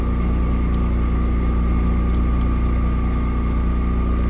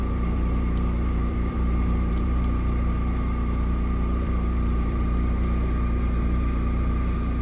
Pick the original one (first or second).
first